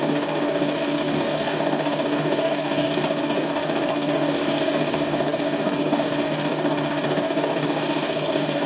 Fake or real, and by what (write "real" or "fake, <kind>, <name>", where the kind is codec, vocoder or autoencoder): fake, codec, DAC